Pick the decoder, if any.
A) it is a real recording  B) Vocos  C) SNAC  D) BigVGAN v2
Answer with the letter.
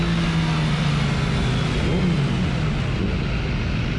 A